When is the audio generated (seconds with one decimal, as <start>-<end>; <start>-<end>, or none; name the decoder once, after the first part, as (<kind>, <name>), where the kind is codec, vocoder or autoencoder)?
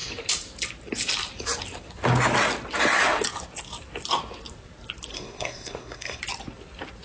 5.1-6.2 (codec, SNAC)